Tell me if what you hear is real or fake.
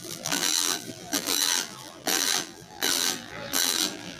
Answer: fake